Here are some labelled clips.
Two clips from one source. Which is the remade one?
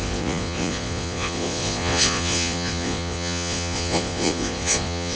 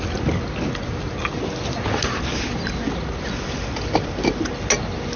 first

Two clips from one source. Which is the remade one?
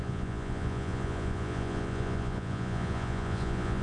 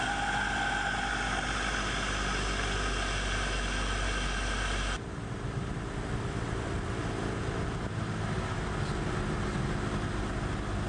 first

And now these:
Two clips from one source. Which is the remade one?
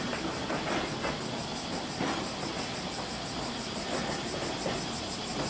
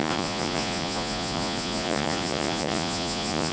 second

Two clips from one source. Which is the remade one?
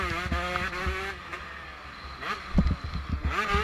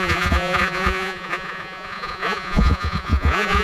second